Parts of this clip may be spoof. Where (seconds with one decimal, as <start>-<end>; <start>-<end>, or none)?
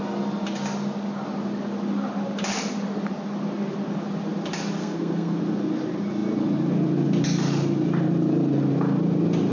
4.8-5.4